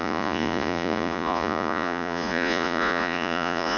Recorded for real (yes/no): no